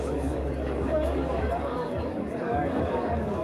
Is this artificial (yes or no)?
yes